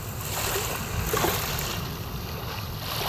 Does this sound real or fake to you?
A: real